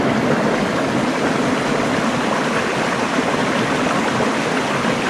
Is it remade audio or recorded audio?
recorded